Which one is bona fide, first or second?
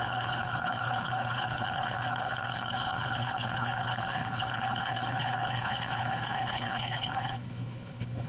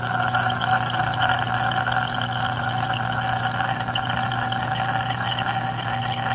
second